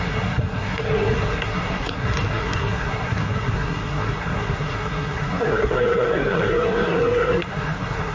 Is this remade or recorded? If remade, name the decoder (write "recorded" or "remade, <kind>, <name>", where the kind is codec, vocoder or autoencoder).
remade, codec, SNAC